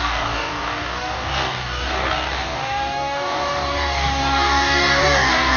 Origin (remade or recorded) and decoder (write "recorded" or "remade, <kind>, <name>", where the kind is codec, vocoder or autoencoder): remade, codec, DAC